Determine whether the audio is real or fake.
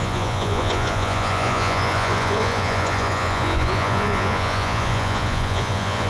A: fake